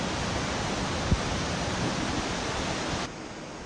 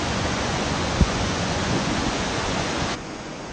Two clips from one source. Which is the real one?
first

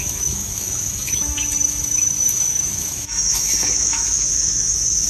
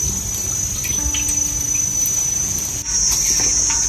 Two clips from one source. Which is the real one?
second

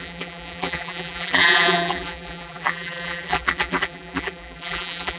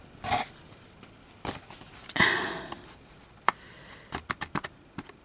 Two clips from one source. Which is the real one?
second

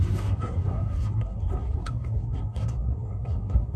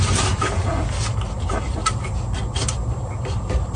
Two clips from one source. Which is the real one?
second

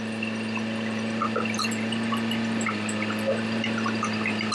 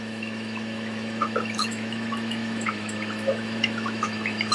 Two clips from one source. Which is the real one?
first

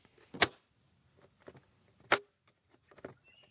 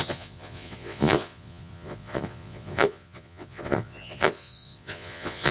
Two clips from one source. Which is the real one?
first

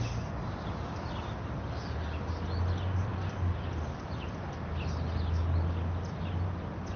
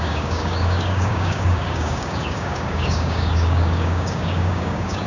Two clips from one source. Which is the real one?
first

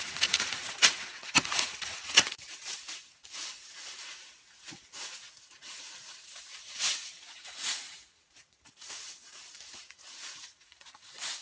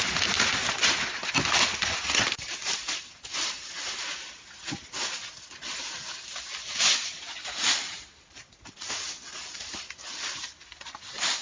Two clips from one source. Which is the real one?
second